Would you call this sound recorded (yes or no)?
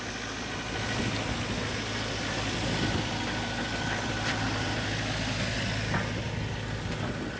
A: yes